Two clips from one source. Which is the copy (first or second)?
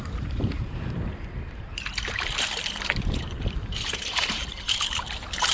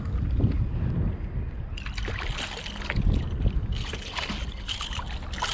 first